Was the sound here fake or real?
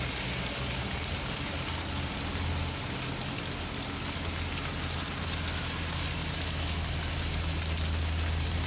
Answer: real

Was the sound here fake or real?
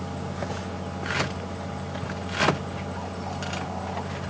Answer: real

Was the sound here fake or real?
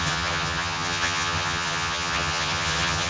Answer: fake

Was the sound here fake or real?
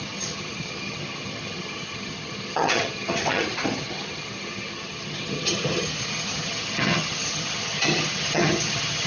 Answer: fake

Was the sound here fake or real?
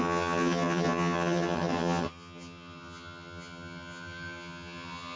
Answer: fake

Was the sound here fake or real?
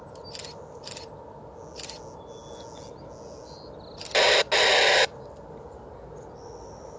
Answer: real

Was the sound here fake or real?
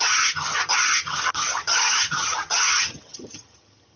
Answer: fake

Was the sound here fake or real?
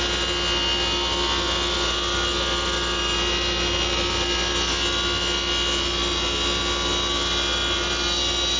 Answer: real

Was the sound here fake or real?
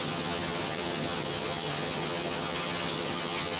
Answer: fake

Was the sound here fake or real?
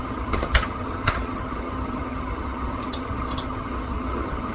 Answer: fake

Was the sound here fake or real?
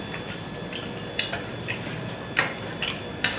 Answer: real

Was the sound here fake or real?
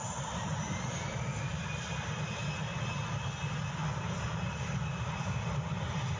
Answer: real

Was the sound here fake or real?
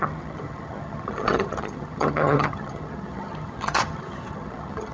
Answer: fake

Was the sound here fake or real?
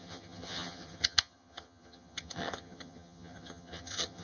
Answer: fake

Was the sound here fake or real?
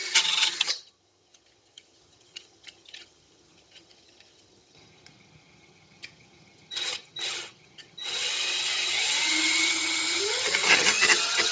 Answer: fake